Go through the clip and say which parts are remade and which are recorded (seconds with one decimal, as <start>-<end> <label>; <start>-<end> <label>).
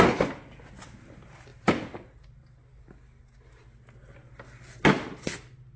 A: 0.0-5.8 recorded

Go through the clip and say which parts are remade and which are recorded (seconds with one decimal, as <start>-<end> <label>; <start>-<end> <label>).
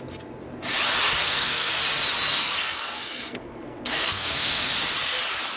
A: 0.0-1.2 recorded; 1.2-1.8 remade; 1.8-2.4 recorded; 2.4-4.7 remade; 4.7-5.6 recorded